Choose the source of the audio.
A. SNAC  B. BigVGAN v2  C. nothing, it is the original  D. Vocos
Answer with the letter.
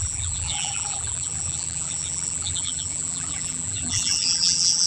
B